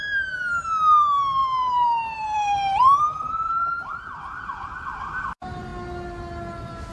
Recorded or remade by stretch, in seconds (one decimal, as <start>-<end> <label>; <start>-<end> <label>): 0.0-3.6 remade; 3.6-4.5 recorded; 4.5-5.7 remade; 5.7-6.9 recorded